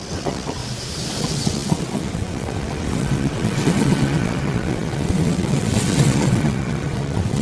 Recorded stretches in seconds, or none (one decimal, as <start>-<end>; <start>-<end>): 0.6-1.2